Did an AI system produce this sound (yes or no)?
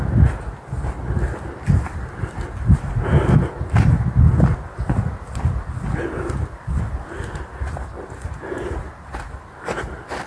no